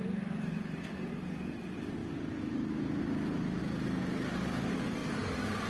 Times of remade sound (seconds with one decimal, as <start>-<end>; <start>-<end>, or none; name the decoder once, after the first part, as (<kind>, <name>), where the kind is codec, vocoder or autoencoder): none